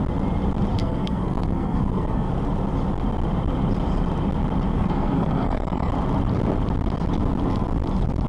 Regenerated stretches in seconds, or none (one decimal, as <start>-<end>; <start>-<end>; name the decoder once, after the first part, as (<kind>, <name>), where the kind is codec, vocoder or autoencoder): 0.8-2.3 (codec, SNAC); 4.7-5.9